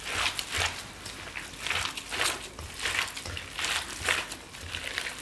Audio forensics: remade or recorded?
recorded